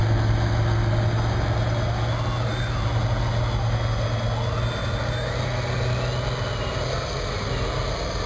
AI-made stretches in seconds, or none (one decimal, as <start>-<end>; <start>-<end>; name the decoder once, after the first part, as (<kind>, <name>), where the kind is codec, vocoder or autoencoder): none